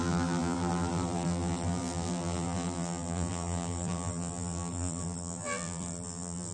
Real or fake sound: fake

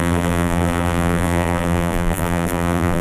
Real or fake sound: fake